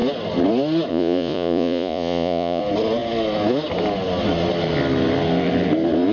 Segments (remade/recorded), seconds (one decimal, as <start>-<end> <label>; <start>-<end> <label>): 0.0-0.9 recorded; 0.9-2.6 remade; 2.6-6.1 recorded